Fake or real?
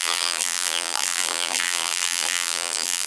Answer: fake